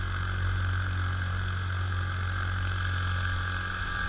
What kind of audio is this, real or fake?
real